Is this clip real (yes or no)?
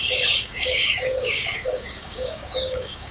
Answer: no